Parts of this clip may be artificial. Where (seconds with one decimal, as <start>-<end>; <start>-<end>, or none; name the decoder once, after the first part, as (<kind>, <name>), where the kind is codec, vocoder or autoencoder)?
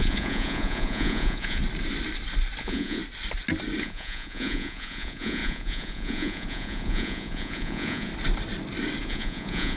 0.0-1.6 (vocoder, Vocos); 2.6-3.0; 3.8-8.1; 9.0-9.8